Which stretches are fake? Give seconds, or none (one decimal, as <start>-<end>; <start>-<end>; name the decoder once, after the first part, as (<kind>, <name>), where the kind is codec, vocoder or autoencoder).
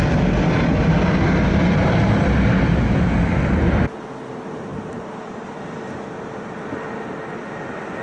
4.7-5.7 (vocoder, BigVGAN v2)